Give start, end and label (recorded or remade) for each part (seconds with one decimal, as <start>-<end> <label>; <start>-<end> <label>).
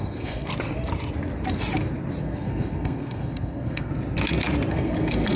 0.0-0.5 remade; 0.5-2.2 recorded; 2.2-3.9 remade; 3.9-4.7 recorded; 4.7-5.4 remade